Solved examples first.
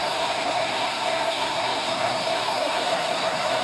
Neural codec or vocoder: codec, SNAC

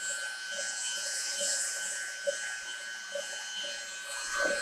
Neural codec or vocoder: none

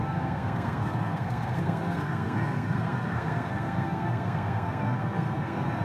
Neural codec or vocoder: codec, SNAC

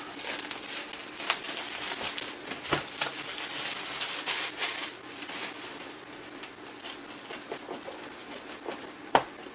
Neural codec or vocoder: none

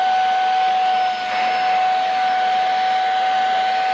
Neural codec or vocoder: none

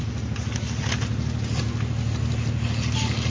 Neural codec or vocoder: none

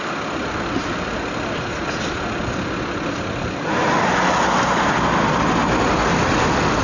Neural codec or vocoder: none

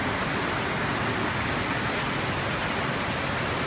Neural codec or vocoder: none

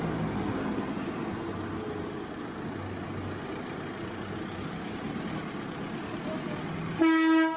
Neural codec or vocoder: none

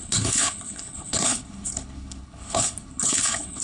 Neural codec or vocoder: codec, HILCodec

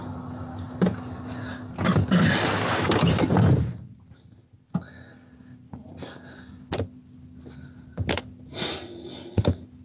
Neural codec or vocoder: none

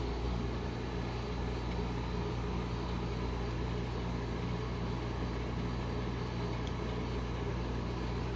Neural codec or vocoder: none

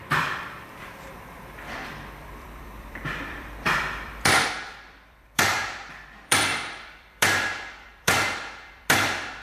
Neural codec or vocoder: vocoder, BigVGAN v2